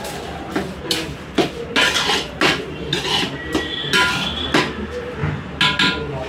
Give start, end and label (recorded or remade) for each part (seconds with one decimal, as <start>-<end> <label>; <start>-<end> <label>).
0.0-6.3 recorded